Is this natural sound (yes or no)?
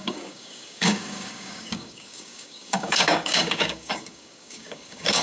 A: no